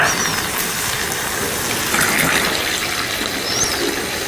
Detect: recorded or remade recorded